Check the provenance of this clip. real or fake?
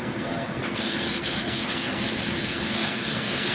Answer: fake